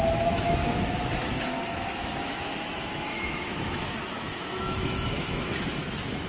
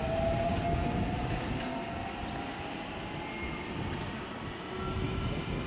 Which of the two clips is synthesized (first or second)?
first